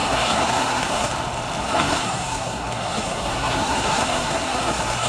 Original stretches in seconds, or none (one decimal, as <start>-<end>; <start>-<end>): 1.1-1.6